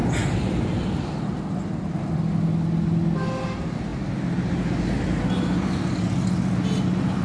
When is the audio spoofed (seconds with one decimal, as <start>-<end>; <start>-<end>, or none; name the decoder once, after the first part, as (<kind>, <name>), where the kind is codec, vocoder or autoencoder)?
none